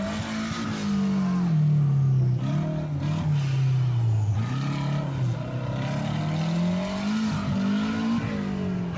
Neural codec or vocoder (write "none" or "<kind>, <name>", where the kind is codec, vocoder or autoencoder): none